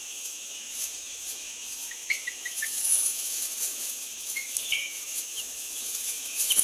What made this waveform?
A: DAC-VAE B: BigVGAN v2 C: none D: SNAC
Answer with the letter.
A